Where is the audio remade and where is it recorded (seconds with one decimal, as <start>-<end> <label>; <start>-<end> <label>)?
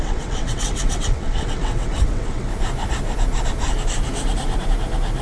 0.0-2.5 remade; 2.5-5.2 recorded